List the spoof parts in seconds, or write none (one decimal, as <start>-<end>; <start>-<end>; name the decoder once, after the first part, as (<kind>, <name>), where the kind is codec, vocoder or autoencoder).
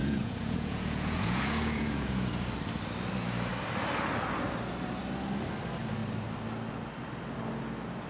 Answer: 0.0-2.3 (vocoder, Vocos)